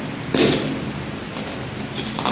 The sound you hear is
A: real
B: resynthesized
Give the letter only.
A